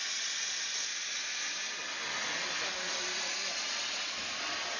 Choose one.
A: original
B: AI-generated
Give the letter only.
A